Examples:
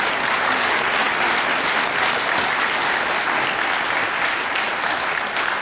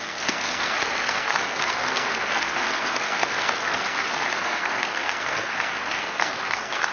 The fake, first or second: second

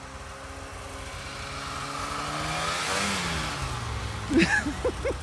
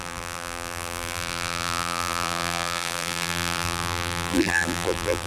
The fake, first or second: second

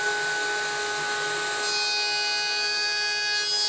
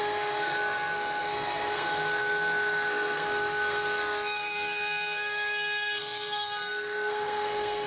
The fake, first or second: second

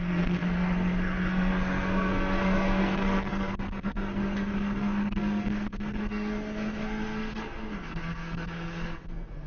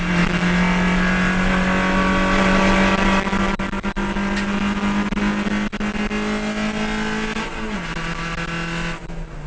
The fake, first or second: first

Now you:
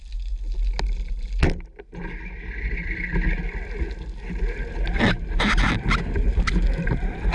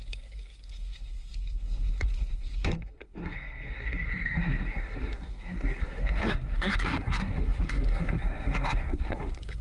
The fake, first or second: second